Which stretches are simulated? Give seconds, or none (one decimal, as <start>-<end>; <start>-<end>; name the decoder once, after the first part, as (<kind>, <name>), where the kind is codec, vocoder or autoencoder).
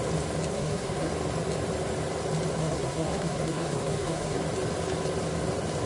0.5-1.1 (codec, SNAC); 2.6-4.4